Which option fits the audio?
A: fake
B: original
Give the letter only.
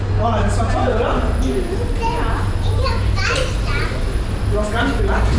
B